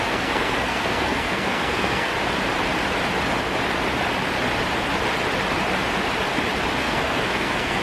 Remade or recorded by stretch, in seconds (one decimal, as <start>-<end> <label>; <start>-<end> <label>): 0.0-2.1 remade; 2.1-6.8 recorded; 6.8-7.8 remade